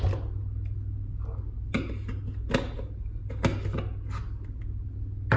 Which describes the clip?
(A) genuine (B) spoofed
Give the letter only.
A